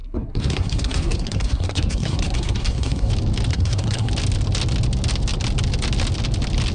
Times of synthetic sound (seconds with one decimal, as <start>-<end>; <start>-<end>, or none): 0.0-3.1; 3.5-4.1